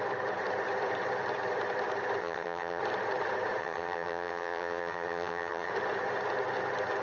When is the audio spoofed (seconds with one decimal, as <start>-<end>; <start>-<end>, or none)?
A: 2.2-2.8; 3.6-5.7